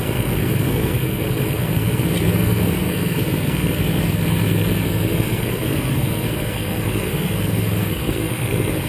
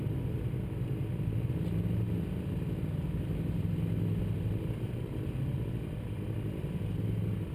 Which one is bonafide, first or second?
second